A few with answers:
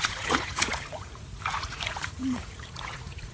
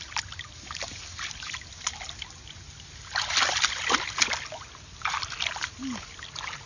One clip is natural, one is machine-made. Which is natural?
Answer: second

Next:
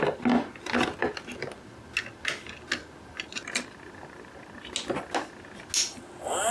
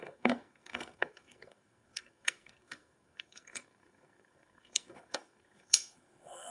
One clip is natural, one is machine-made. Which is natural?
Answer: first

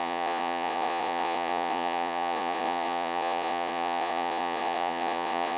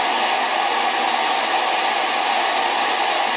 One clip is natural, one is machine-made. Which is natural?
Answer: second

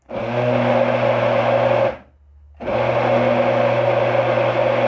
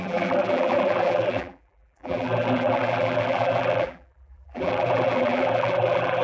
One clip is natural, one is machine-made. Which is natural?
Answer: first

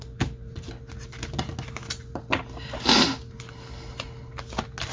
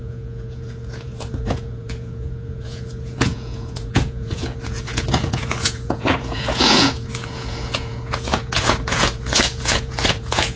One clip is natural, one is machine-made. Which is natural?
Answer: first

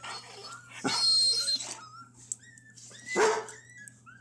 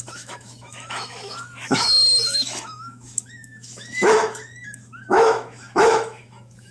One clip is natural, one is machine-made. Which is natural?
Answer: first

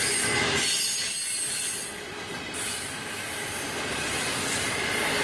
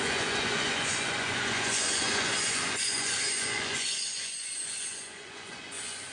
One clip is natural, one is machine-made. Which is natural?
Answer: first